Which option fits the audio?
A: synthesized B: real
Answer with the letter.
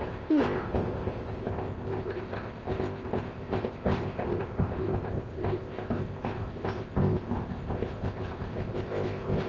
A